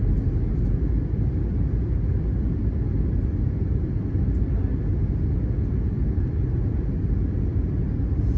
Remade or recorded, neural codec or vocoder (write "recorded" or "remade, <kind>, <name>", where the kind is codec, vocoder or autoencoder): recorded